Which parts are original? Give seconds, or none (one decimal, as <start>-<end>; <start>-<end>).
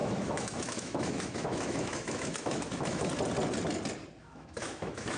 3.1-4.2